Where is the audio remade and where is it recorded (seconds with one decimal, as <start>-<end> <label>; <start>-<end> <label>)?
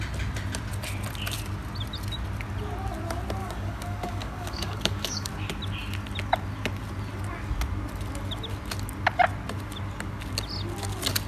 0.0-3.4 recorded; 3.4-5.3 remade; 5.3-11.3 recorded